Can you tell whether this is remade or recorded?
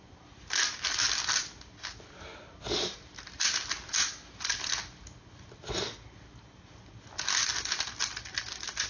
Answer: recorded